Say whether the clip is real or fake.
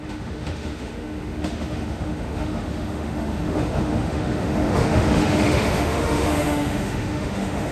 fake